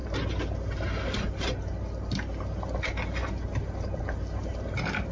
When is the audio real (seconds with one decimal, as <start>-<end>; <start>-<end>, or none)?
0.0-5.1